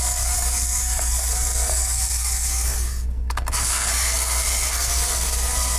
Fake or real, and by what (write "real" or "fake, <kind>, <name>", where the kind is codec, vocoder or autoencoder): fake, codec, SNAC